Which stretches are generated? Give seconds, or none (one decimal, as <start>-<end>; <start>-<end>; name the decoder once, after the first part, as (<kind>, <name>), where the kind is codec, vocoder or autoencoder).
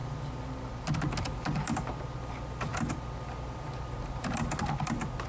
none